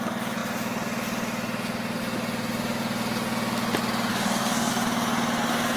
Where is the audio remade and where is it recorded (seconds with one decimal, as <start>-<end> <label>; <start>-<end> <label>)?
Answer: 0.0-4.1 recorded; 4.1-4.7 remade; 4.7-5.8 recorded